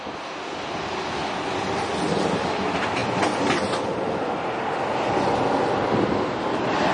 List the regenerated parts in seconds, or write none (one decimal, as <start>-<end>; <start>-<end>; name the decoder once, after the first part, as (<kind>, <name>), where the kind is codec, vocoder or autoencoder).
none